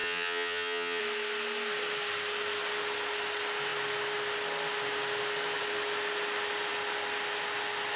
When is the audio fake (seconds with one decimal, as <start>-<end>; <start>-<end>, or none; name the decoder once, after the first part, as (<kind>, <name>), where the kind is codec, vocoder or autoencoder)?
0.0-1.0 (vocoder, HiFi-GAN)